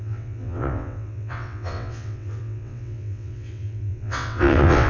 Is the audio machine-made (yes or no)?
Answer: yes